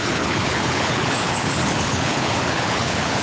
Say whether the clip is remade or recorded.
remade